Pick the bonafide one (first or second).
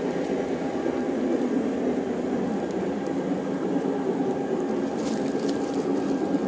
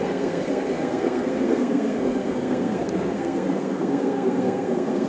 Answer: first